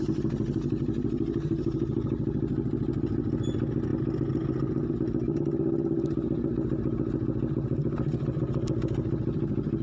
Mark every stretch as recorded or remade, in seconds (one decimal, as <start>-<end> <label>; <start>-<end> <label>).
0.0-9.8 recorded